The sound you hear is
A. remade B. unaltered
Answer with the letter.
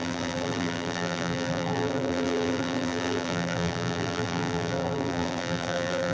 A